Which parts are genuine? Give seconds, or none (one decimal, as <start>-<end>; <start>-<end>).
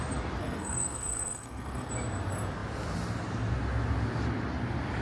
0.0-0.4; 1.9-5.0